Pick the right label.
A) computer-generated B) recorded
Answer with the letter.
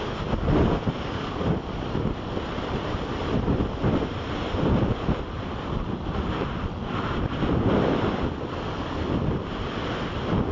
A